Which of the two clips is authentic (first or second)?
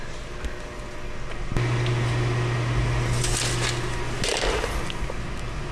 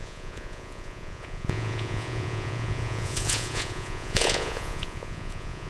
first